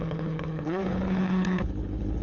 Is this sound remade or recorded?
remade